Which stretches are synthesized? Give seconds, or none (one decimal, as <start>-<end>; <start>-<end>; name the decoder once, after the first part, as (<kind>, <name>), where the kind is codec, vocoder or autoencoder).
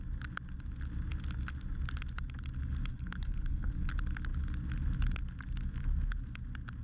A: 2.9-3.7 (codec, HILCodec)